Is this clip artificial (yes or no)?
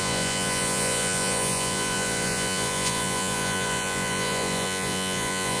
yes